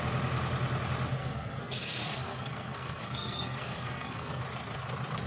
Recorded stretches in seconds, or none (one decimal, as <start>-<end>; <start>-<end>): 0.0-1.2; 4.4-5.3